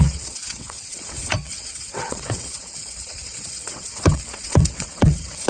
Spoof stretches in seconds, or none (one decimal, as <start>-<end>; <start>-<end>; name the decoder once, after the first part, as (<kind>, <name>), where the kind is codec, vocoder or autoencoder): 0.0-5.5 (vocoder, WaveNeXt)